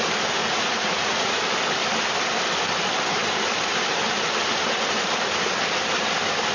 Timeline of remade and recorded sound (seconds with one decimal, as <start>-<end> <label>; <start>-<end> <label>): 0.0-0.4 recorded; 0.4-1.3 remade; 1.3-6.5 recorded

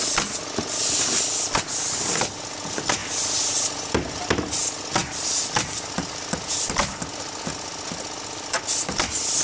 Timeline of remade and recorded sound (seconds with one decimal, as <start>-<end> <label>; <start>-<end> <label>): 0.0-9.4 recorded